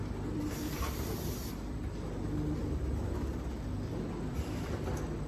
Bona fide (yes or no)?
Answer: no